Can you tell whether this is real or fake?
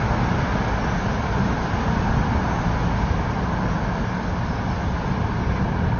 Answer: real